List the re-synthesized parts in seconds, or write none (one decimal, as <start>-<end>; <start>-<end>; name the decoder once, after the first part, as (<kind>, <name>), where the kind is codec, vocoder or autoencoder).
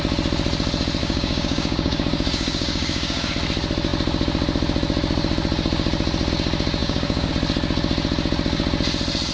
1.0-3.3 (codec, DAC); 6.8-7.3